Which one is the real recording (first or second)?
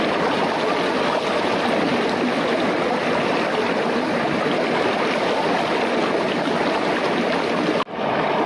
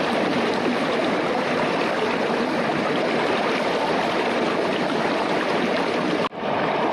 first